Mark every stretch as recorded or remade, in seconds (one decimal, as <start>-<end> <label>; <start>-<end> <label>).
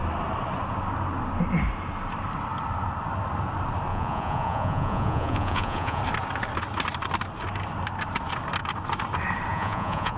0.0-3.9 recorded; 3.9-6.0 remade; 6.0-9.5 recorded; 9.5-10.2 remade